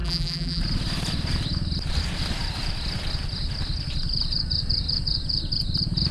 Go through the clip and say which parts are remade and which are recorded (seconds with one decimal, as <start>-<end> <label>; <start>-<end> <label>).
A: 0.0-0.6 remade; 0.6-6.1 recorded

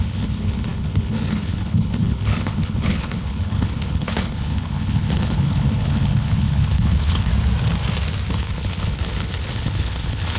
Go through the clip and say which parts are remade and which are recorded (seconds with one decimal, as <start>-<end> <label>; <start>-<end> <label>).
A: 0.0-7.3 remade; 7.3-8.3 recorded; 8.3-10.4 remade

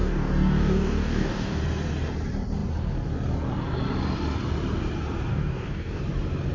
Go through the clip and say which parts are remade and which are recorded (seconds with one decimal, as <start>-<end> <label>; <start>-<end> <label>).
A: 0.0-1.6 remade; 1.6-5.3 recorded; 5.3-6.0 remade; 6.0-6.5 recorded

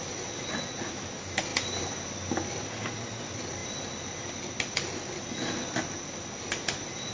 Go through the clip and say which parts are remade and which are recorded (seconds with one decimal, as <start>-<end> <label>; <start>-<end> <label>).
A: 0.0-7.1 recorded

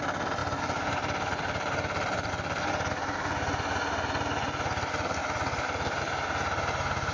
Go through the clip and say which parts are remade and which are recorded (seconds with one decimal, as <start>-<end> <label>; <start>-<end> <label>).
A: 0.0-0.4 recorded; 0.4-2.3 remade; 2.3-5.2 recorded; 5.2-6.0 remade; 6.0-7.1 recorded

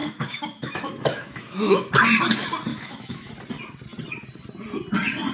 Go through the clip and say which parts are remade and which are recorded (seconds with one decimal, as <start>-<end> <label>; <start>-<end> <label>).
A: 0.0-1.9 remade; 1.9-2.7 recorded; 2.7-3.3 remade; 3.3-5.3 recorded